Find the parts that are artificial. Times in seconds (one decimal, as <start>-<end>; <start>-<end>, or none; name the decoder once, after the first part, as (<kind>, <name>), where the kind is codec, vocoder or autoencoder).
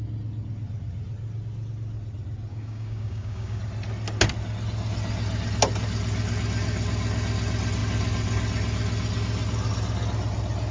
2.5-3.6 (codec, DAC)